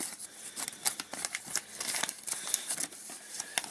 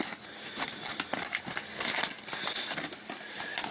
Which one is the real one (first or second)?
second